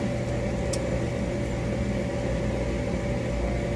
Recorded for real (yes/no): yes